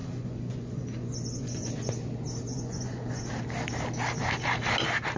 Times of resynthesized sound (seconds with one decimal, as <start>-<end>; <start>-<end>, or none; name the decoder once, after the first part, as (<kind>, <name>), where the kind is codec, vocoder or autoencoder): 0.0-1.7 (vocoder, Vocos); 2.5-3.3